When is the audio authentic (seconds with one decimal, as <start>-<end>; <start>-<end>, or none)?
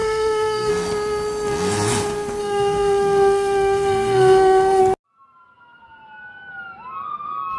0.7-2.4; 4.8-7.6